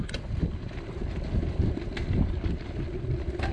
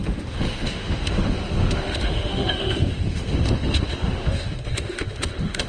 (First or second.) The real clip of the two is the first